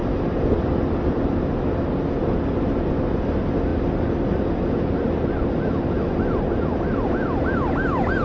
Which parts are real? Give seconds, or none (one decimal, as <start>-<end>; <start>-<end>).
0.0-8.2